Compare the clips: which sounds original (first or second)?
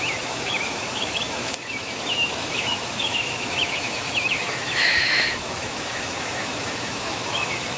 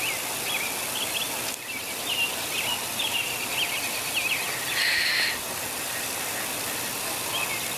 second